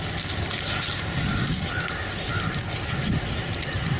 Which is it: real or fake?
real